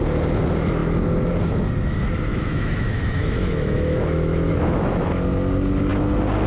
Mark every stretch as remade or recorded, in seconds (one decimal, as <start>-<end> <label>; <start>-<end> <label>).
0.0-2.3 recorded; 2.3-5.1 remade; 5.1-6.5 recorded